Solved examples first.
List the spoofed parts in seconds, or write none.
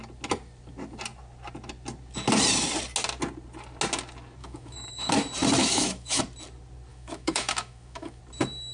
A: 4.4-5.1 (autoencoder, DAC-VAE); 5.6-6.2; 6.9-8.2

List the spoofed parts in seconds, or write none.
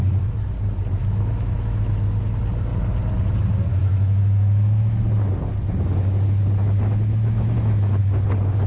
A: 1.0-2.2 (autoencoder, DAC-VAE); 3.7-5.0; 6.6-8.0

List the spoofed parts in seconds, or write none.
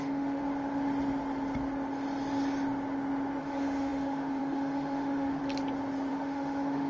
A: 0.0-0.4 (autoencoder, DAC-VAE); 3.4-5.4; 6.1-6.9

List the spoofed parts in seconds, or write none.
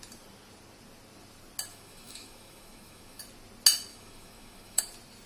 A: 1.7-3.2 (autoencoder, DAC-VAE); 3.9-4.8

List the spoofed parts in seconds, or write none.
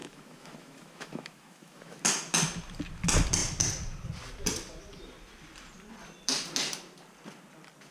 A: 0.0-2.0 (autoencoder, DAC-VAE)